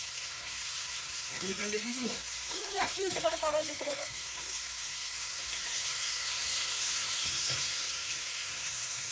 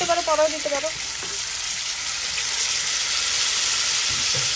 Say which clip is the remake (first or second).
first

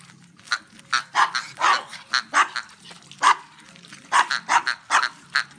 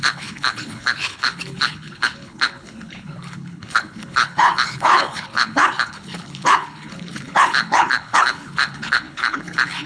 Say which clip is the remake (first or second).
second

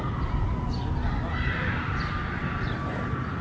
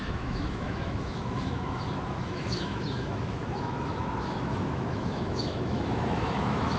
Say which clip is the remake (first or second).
second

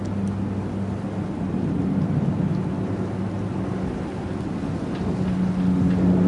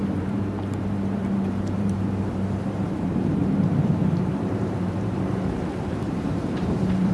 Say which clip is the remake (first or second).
second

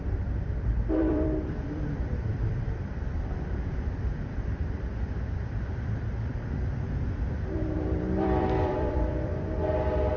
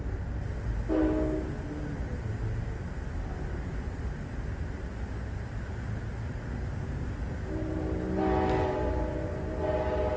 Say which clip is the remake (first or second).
first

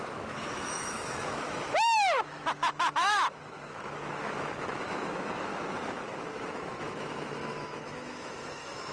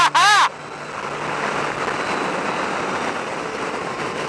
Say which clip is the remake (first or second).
first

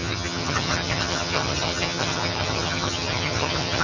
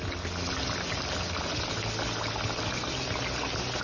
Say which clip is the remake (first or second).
first